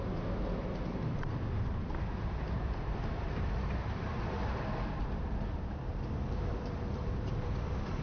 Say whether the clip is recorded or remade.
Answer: remade